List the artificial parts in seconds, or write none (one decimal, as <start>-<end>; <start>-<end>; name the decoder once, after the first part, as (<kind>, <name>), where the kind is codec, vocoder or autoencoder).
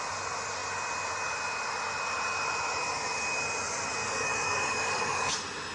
4.0-5.3 (codec, DAC)